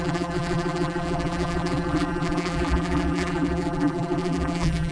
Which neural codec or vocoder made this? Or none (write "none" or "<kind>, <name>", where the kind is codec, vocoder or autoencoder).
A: vocoder, BigVGAN v2